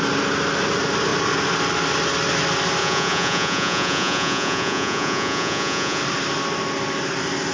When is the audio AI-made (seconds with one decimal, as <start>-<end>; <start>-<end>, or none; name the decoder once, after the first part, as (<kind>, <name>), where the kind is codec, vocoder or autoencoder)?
2.8-6.0 (vocoder, Vocos)